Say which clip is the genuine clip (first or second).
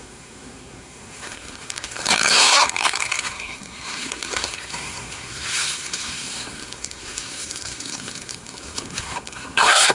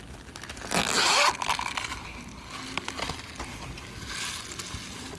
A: second